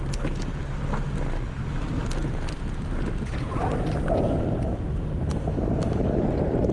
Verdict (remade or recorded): recorded